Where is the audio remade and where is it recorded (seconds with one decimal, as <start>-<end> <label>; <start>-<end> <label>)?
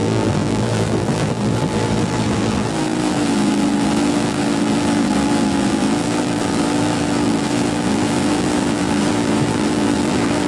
0.0-10.5 remade